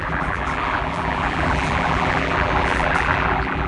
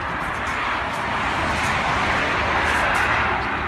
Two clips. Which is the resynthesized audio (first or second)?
first